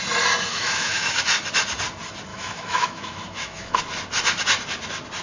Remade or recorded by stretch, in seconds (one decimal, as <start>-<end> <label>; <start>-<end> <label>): 0.0-0.5 recorded; 0.5-1.2 remade; 1.2-2.3 recorded; 2.3-3.8 remade; 3.8-5.2 recorded